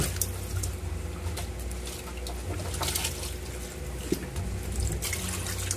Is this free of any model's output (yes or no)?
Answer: yes